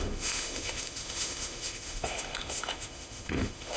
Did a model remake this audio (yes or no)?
yes